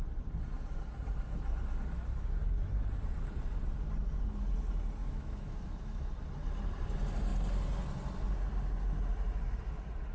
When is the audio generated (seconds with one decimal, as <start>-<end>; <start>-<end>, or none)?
5.0-6.1